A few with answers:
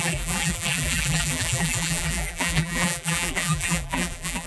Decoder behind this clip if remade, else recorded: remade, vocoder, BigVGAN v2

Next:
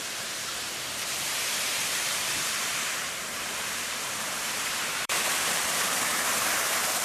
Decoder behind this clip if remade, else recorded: remade, vocoder, BigVGAN v2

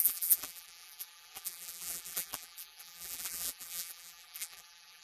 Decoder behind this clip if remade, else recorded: remade, vocoder, BigVGAN v2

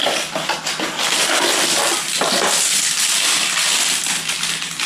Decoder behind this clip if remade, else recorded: recorded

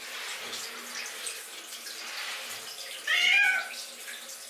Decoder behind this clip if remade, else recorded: recorded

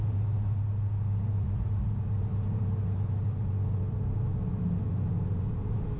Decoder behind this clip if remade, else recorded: recorded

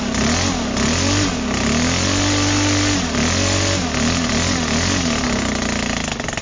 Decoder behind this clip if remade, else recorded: recorded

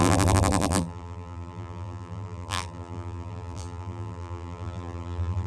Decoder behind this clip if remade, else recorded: remade, vocoder, BigVGAN v2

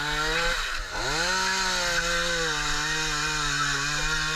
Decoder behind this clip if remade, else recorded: recorded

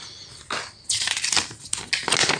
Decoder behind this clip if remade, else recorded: recorded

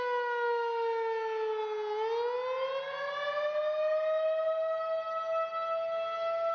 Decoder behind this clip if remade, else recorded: recorded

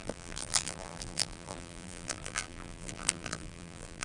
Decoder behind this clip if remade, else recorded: remade, vocoder, BigVGAN v2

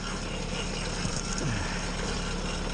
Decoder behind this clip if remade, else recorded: recorded